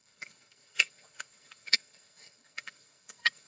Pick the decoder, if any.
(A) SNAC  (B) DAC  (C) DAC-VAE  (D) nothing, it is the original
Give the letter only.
A